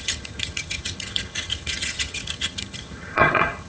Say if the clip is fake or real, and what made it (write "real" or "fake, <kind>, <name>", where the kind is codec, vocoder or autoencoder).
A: fake, vocoder, HiFi-GAN